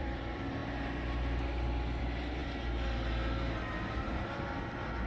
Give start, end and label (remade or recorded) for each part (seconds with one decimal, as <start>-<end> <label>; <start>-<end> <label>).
0.0-0.6 remade; 0.6-2.0 recorded; 2.0-2.4 remade; 2.4-3.9 recorded; 3.9-5.1 remade